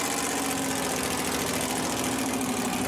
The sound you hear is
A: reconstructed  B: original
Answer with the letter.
B